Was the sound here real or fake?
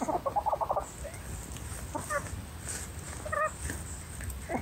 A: real